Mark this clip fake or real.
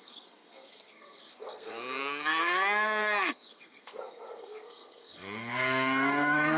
fake